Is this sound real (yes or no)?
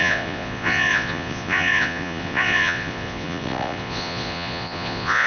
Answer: no